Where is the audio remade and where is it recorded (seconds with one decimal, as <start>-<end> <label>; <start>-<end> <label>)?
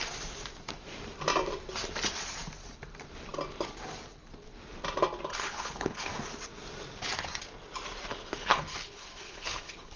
0.0-5.3 recorded; 5.3-6.1 remade; 6.1-8.1 recorded; 8.1-10.0 remade